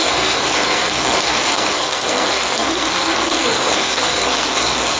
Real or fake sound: fake